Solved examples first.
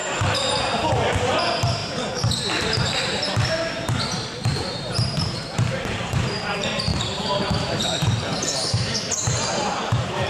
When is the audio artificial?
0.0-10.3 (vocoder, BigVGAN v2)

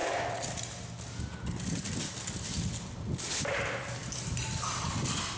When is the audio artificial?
none